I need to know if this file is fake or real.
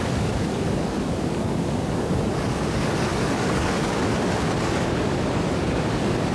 fake